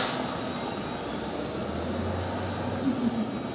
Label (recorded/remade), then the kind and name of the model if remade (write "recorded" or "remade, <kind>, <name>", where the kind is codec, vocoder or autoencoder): recorded